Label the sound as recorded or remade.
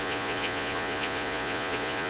remade